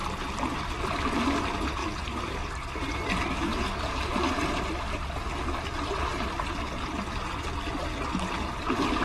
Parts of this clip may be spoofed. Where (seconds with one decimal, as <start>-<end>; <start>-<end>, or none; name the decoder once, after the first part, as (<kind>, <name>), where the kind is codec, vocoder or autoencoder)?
1.8-2.5 (vocoder, BigVGAN v2); 3.5-4.7; 6.1-7.4